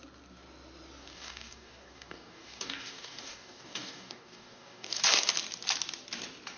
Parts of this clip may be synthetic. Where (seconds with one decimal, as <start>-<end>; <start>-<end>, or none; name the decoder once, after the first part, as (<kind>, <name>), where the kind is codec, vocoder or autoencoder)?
1.0-5.0 (codec, DAC)